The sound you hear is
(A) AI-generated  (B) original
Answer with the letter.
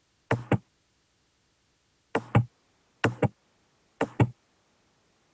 B